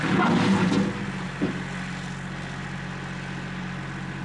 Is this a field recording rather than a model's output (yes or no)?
yes